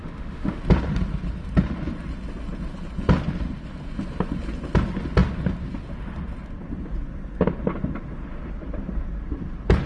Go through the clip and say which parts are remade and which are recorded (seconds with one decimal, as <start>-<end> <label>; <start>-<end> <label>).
0.0-0.6 remade; 0.6-9.9 recorded